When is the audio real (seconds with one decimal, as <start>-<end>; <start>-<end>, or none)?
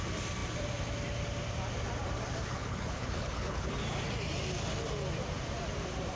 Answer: 0.0-2.5; 3.7-6.2